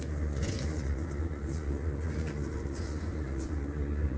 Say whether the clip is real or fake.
fake